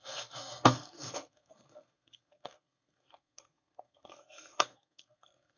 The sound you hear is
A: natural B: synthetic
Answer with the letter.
B